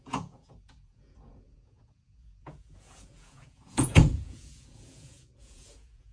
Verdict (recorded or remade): remade